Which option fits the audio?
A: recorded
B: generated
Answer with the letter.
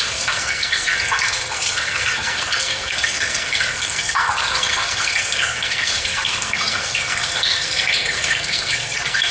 B